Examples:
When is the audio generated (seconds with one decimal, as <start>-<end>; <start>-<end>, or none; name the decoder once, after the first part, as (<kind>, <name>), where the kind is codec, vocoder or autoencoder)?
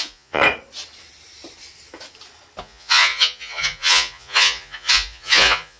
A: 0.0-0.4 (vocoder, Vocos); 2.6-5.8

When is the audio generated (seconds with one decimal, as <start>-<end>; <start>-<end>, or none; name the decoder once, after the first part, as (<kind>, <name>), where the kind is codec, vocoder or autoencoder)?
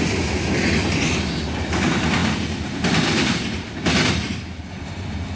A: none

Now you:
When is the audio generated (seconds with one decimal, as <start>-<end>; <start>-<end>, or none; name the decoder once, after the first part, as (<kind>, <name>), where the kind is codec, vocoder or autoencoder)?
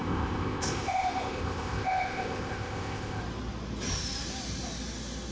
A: 0.0-3.2 (codec, ZipCodec)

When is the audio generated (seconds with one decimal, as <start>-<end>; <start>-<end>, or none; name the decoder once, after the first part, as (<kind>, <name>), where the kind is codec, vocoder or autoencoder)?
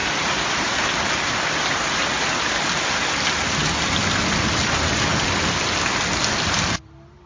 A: none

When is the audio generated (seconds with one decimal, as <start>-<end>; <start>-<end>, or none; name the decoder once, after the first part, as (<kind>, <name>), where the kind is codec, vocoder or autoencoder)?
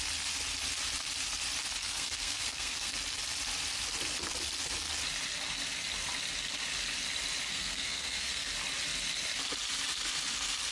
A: 1.8-2.9 (codec, SNAC); 7.5-8.5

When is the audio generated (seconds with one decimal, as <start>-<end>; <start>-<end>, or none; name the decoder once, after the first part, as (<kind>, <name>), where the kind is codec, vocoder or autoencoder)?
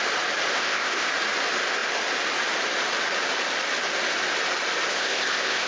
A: 0.5-1.1 (codec, ZipCodec); 4.9-5.7